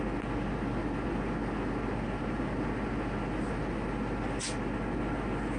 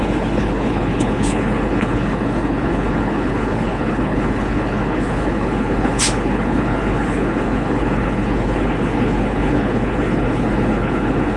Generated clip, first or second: second